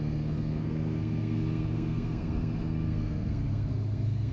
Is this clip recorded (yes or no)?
no